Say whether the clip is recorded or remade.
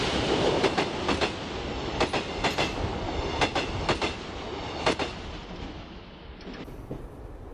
recorded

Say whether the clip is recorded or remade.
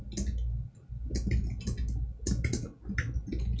recorded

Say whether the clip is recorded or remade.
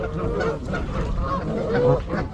recorded